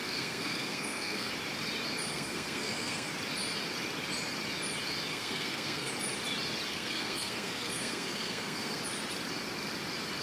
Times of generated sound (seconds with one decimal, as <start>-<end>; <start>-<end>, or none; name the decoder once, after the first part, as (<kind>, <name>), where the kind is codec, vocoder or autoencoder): 0.0-1.3 (codec, SNAC); 2.1-3.1; 5.1-5.9; 6.7-8.8